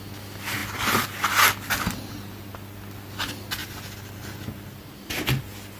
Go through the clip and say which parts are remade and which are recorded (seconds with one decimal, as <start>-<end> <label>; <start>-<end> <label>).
0.0-5.8 recorded